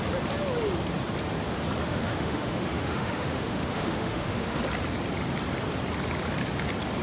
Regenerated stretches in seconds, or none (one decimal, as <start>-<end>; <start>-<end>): 1.8-4.6